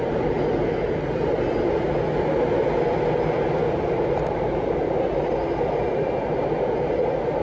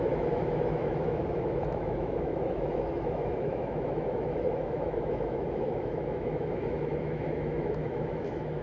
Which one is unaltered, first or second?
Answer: first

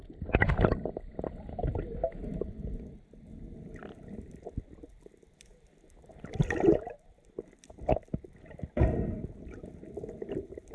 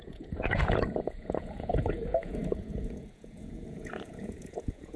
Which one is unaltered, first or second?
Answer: first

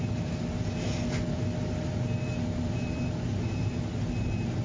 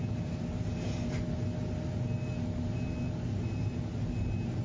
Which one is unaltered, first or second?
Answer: second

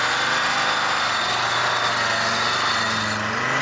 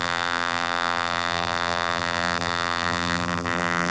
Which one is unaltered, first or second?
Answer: first